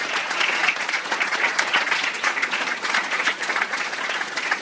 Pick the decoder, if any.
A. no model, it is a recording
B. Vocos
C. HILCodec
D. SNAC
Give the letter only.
B